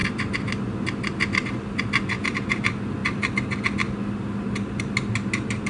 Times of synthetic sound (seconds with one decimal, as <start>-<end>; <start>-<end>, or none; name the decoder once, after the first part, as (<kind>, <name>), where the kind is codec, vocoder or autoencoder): none